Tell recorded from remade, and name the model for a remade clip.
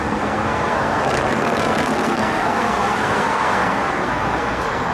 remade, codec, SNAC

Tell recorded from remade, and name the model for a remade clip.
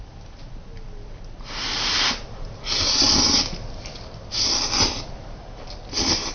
recorded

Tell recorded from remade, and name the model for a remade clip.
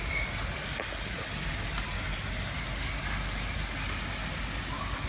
recorded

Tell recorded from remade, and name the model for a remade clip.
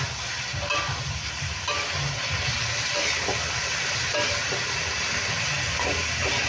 recorded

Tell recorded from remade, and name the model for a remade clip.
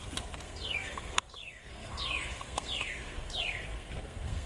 remade, codec, SNAC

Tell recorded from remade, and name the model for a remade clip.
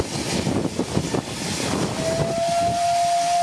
recorded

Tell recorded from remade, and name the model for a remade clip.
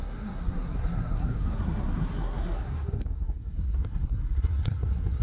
remade, codec, SNAC